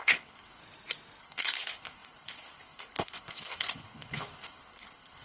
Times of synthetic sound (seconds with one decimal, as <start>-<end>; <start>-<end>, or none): 0.0-0.6; 1.2-5.2